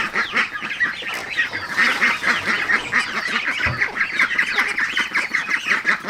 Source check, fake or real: real